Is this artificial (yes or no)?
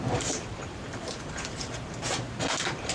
yes